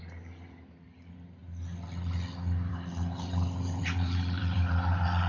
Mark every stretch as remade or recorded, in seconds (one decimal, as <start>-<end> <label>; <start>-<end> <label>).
0.0-1.4 remade; 1.4-2.7 recorded; 2.7-5.3 remade